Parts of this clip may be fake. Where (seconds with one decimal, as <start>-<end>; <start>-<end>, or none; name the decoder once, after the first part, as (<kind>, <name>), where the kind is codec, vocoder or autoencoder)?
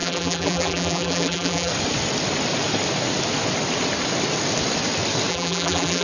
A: 0.0-1.7 (vocoder, BigVGAN v2); 5.3-6.0